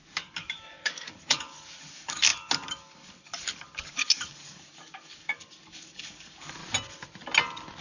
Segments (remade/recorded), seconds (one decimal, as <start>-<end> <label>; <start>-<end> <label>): 0.0-6.6 remade; 6.6-7.8 recorded